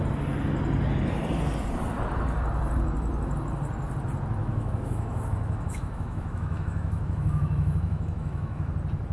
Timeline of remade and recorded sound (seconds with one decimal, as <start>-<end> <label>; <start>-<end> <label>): 0.0-4.4 recorded; 4.4-8.7 remade; 8.7-9.1 recorded